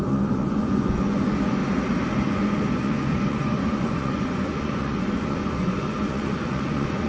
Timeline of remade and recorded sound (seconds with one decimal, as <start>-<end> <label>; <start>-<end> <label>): 0.0-1.6 remade; 1.6-2.3 recorded; 2.3-7.1 remade